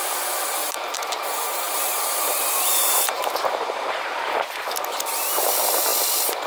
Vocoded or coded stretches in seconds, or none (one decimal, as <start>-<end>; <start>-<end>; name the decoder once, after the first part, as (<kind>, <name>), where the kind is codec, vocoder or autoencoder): 0.6-4.5 (vocoder, BigVGAN v2)